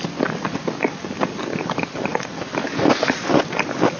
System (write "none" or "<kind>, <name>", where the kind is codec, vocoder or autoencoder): none